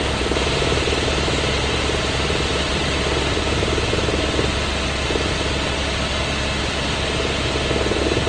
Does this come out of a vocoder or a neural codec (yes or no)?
no